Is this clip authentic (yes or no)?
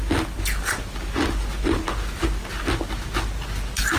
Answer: yes